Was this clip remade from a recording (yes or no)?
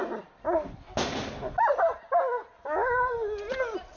no